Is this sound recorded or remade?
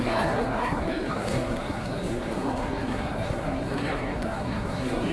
remade